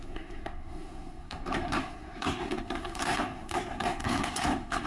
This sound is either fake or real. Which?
fake